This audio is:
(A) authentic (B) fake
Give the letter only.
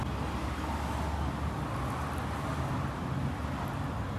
A